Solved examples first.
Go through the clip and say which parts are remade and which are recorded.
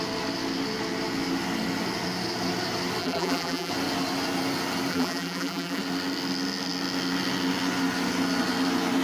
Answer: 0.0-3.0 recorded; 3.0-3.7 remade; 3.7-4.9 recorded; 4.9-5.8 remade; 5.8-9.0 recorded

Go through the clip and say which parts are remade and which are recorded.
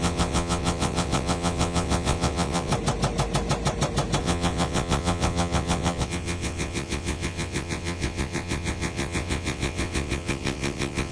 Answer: 0.0-2.7 remade; 2.7-4.2 recorded; 4.2-11.1 remade